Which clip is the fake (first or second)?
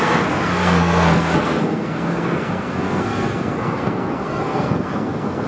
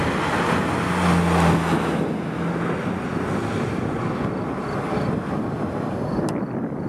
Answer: first